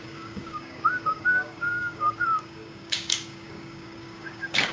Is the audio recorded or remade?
remade